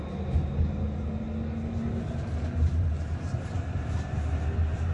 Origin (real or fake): real